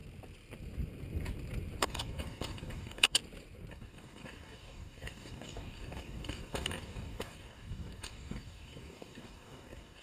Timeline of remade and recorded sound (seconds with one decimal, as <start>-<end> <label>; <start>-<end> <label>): 0.0-1.8 recorded; 1.8-3.2 remade; 3.2-3.7 recorded; 3.7-10.0 remade